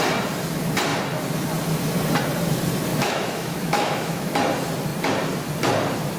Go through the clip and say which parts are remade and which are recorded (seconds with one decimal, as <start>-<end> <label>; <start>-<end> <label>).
0.0-2.9 recorded; 2.9-4.3 remade; 4.3-6.2 recorded